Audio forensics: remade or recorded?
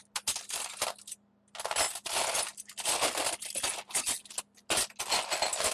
recorded